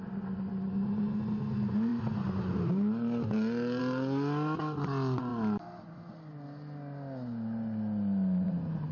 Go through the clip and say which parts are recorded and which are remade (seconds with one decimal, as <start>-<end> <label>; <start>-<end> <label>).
0.0-8.9 recorded

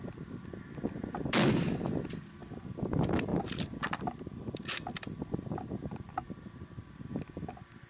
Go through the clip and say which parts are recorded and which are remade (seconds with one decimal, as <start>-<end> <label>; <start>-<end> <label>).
0.0-7.9 recorded

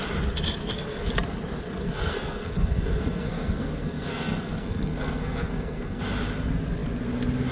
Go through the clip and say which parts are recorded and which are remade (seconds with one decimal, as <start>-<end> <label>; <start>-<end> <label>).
0.0-0.6 recorded; 0.6-1.1 remade; 1.1-1.8 recorded; 1.8-6.0 remade; 6.0-7.5 recorded

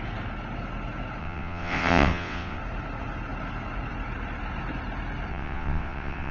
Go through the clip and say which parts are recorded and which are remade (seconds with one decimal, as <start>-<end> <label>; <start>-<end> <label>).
0.0-1.2 recorded; 1.2-2.6 remade; 2.6-5.3 recorded; 5.3-6.3 remade

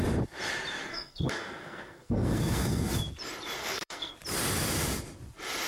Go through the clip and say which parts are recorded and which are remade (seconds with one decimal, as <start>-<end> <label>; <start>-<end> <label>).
0.0-0.8 recorded; 0.8-2.9 remade; 2.9-3.6 recorded; 3.6-4.1 remade; 4.1-5.7 recorded

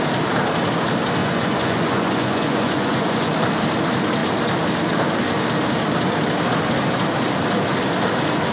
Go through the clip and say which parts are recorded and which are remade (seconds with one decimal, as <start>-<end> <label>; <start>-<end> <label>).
0.0-1.2 recorded; 1.2-3.3 remade; 3.3-8.5 recorded

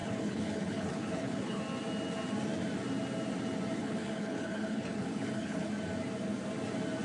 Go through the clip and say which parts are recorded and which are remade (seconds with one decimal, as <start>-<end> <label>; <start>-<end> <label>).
0.0-1.6 remade; 1.6-3.8 recorded; 3.8-5.7 remade; 5.7-7.0 recorded

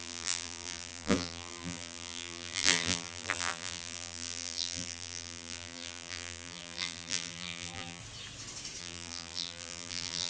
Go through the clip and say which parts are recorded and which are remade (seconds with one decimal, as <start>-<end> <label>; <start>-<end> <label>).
0.0-8.0 remade; 8.0-8.8 recorded; 8.8-10.3 remade